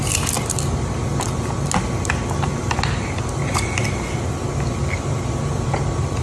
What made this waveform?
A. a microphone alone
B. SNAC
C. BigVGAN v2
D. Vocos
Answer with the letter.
A